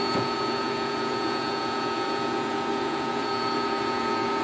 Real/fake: fake